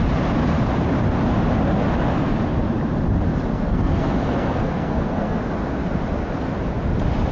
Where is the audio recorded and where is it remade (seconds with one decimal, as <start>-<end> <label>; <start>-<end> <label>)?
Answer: 0.0-3.5 recorded; 3.5-5.4 remade; 5.4-7.3 recorded